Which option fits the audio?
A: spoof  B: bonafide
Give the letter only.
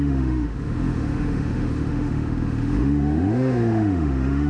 A